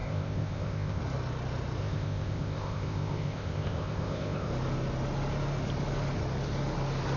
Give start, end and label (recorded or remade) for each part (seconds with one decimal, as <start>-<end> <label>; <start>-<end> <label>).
0.0-1.0 remade; 1.0-1.8 recorded; 1.8-4.5 remade; 4.5-7.2 recorded